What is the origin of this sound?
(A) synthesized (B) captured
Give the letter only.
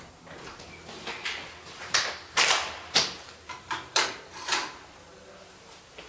B